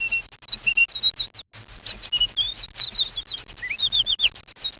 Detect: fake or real real